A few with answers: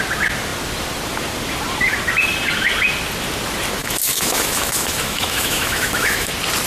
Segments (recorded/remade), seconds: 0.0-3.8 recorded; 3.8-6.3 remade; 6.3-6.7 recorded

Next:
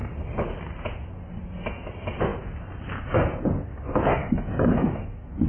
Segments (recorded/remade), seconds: 0.0-3.7 recorded; 3.7-5.5 remade

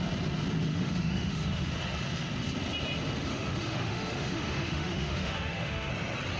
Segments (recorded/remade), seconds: 0.0-0.7 recorded; 0.7-1.7 remade; 1.7-3.3 recorded; 3.3-5.9 remade; 5.9-6.4 recorded

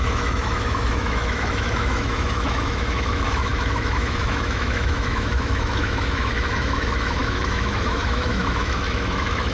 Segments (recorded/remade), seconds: 0.0-9.5 remade

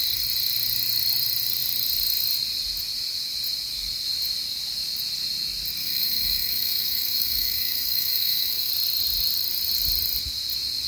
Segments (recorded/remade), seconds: 0.0-5.8 recorded; 5.8-8.7 remade; 8.7-10.9 recorded

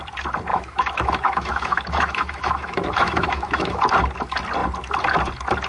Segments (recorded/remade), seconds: 0.0-0.5 recorded; 0.5-3.9 remade; 3.9-5.7 recorded

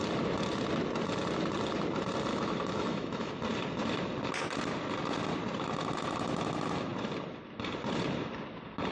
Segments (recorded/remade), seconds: 0.0-2.3 recorded; 2.3-3.3 remade; 3.3-8.9 recorded